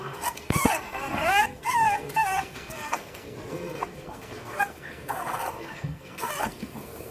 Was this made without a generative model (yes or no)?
no